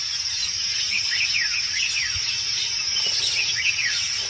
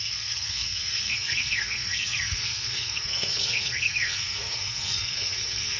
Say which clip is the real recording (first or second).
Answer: first